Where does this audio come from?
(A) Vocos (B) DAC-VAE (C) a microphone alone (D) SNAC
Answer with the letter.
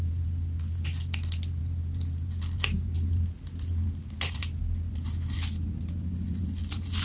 C